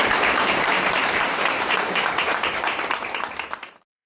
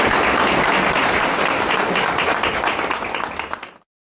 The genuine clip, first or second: second